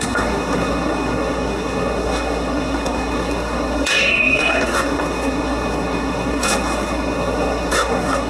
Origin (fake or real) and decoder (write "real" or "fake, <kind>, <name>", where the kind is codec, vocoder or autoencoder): fake, codec, SNAC